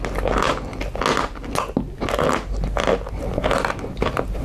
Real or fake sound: real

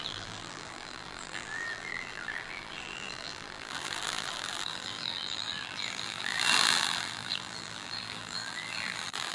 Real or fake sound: fake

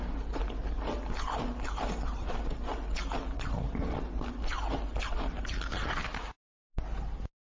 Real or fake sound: real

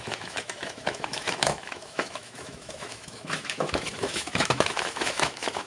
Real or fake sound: fake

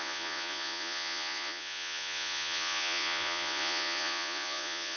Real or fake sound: fake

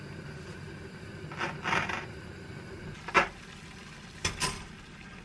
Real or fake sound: real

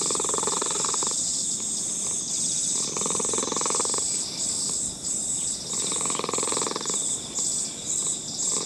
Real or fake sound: real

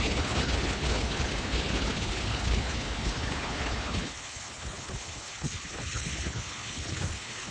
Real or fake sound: fake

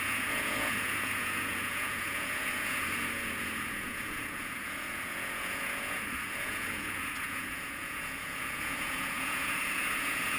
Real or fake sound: fake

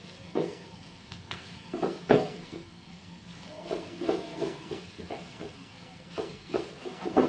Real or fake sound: fake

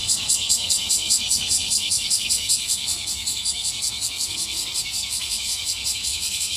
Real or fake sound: fake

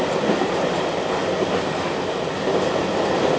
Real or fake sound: real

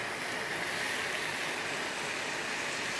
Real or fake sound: real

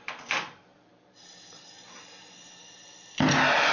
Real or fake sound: real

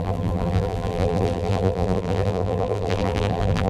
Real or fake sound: fake